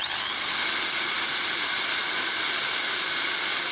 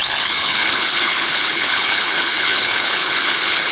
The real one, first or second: first